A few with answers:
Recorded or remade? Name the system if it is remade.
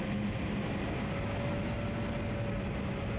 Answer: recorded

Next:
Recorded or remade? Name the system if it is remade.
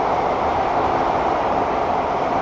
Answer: recorded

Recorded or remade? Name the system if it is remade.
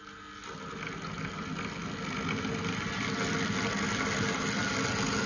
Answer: recorded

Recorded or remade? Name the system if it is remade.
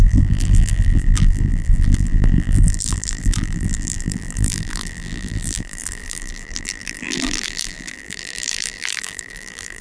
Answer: remade, vocoder, BigVGAN v2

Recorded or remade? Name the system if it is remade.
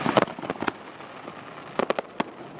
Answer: recorded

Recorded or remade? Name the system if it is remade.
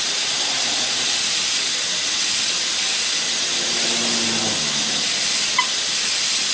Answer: recorded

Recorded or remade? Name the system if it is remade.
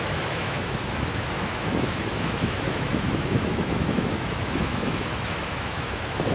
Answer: remade, autoencoder, DAC-VAE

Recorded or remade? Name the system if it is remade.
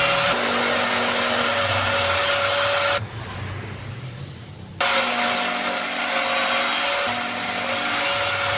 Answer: recorded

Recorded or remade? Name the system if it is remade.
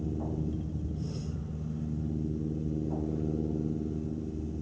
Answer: recorded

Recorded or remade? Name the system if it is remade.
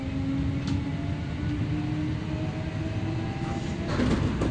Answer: recorded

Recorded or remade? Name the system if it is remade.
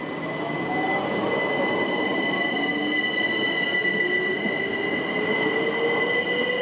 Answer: recorded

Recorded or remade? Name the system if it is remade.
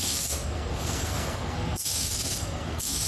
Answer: remade, codec, SNAC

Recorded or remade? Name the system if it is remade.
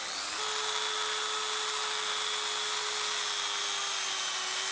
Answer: recorded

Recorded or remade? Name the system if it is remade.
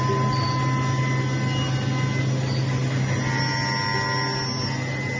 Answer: recorded